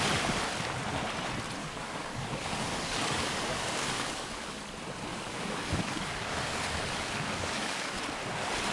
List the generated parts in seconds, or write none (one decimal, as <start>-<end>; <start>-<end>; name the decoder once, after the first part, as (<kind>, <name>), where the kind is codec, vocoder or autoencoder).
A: 1.6-4.6 (codec, DAC); 5.1-8.0

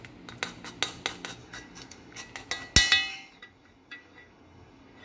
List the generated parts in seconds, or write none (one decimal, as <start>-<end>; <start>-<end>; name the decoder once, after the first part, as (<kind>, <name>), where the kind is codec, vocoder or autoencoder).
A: 1.4-2.2 (codec, DAC); 3.1-5.0

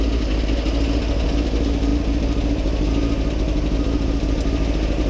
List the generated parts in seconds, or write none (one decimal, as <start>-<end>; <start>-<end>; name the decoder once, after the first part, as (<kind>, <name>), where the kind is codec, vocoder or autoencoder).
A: none

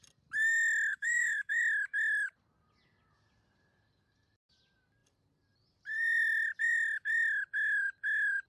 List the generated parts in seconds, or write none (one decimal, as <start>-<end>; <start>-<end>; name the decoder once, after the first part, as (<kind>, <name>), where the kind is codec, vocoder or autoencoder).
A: 0.9-1.6 (codec, DAC)

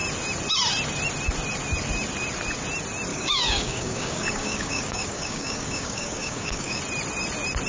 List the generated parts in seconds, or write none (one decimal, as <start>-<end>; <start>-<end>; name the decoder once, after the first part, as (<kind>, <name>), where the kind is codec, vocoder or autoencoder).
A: 3.1-6.8 (codec, DAC)